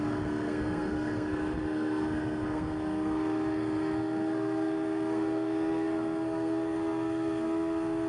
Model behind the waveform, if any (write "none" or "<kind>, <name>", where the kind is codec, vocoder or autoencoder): codec, SNAC